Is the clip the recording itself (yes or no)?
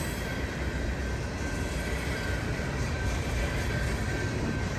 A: yes